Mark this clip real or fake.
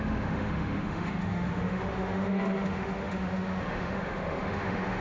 fake